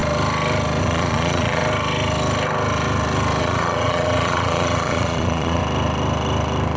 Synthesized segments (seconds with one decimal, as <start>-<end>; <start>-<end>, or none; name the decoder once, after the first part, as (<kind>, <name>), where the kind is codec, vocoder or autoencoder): 0.8-1.6 (vocoder, Vocos); 3.4-5.6